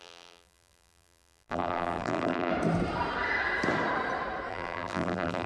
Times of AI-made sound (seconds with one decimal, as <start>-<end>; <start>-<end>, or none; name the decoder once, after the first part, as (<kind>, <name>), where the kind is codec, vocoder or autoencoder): 0.0-2.5 (vocoder, BigVGAN v2); 4.5-5.5